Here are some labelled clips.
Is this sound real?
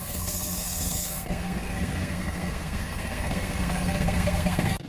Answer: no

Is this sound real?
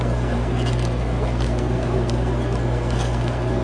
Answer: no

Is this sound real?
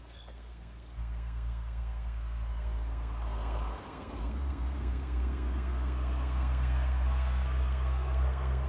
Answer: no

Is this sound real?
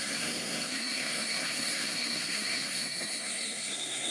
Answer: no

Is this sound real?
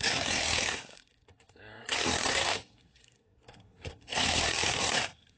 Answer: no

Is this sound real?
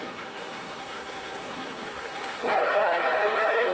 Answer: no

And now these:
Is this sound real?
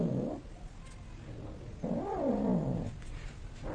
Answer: yes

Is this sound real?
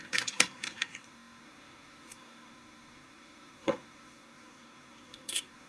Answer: no